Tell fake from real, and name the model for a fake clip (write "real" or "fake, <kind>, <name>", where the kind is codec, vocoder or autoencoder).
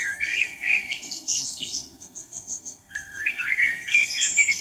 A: fake, codec, SNAC